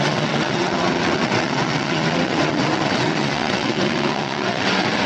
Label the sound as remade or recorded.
remade